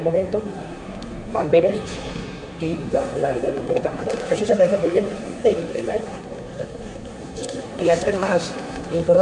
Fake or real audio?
fake